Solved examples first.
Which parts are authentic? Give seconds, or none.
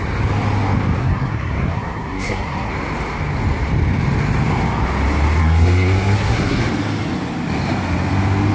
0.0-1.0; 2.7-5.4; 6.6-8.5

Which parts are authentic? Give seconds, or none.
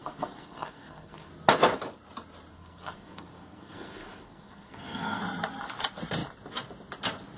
1.3-2.5; 5.2-7.4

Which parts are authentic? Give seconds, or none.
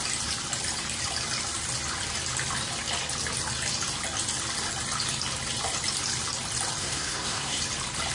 0.0-6.8; 7.6-8.1